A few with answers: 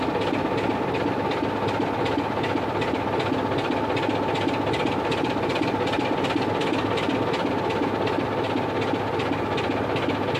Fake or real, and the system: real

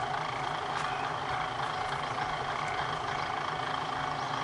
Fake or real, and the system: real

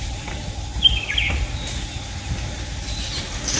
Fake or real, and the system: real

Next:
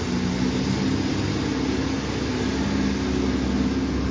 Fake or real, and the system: real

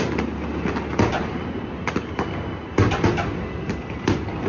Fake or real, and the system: real